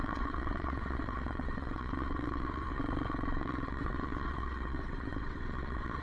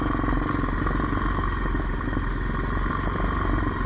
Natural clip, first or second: second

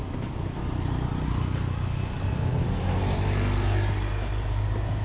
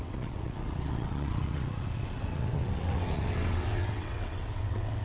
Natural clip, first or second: first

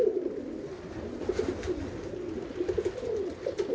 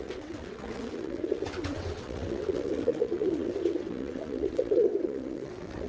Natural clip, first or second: first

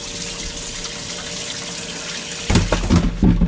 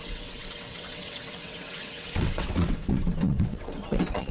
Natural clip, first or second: first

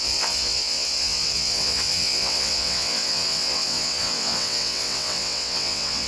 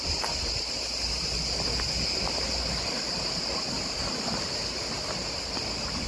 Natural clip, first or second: second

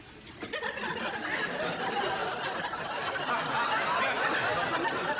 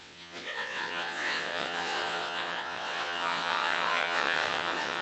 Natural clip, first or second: first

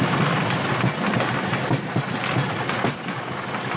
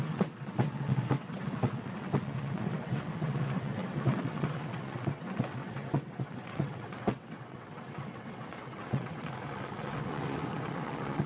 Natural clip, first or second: first